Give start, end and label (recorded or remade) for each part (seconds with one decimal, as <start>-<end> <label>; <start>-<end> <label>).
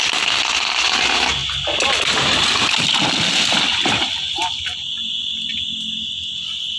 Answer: 0.0-6.8 recorded